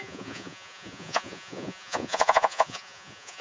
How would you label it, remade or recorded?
remade